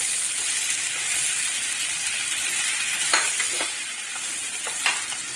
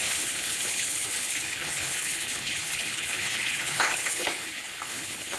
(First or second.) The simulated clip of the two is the second